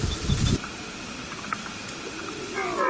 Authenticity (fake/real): real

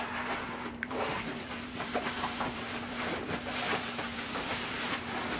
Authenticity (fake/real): fake